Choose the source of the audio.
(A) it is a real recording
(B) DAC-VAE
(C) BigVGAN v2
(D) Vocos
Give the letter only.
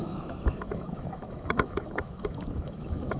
B